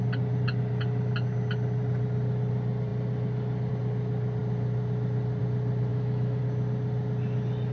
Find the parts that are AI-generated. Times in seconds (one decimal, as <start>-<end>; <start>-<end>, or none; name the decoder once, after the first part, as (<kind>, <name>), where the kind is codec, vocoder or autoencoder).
5.9-6.4 (autoencoder, DAC-VAE)